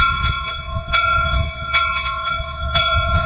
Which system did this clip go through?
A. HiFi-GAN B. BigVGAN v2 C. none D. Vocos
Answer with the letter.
D